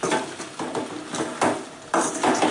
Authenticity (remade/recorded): recorded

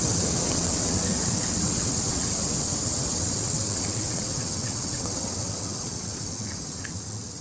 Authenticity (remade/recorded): remade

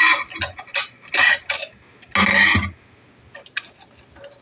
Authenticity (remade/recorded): recorded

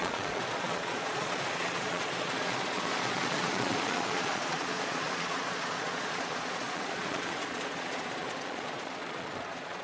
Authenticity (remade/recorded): remade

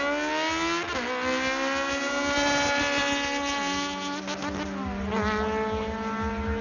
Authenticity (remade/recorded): recorded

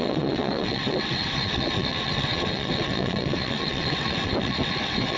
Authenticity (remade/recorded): remade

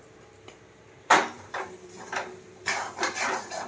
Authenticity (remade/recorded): recorded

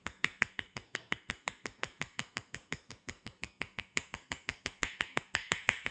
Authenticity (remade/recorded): remade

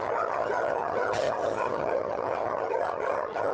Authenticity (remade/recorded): remade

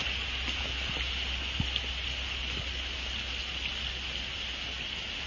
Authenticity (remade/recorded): recorded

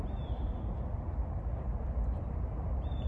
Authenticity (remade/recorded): recorded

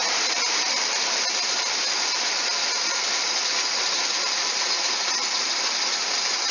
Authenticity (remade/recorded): remade